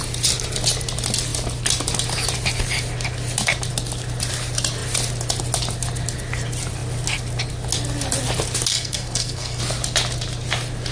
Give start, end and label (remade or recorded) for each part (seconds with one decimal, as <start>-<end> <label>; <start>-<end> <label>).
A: 0.0-8.7 recorded; 8.7-9.6 remade; 9.6-10.9 recorded